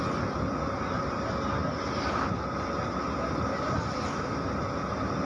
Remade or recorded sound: recorded